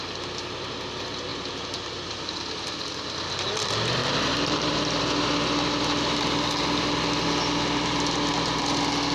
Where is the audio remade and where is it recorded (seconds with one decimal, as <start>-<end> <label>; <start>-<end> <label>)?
0.0-4.0 recorded; 4.0-5.0 remade; 5.0-9.1 recorded